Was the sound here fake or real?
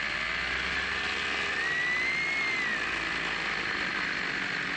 real